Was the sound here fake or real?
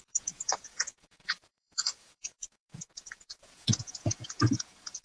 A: fake